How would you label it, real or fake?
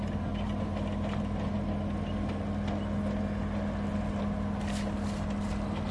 real